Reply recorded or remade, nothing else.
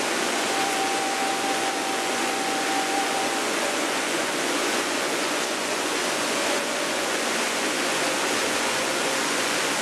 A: remade